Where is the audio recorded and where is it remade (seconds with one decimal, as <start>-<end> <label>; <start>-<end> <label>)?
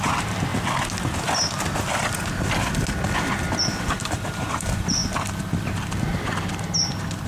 0.0-0.5 remade; 0.5-3.8 recorded; 3.8-5.0 remade; 5.0-7.3 recorded